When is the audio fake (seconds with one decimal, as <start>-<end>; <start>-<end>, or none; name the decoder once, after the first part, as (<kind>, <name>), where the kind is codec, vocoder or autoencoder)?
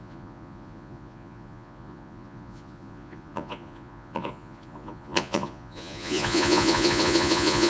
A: 0.0-7.7 (vocoder, Vocos)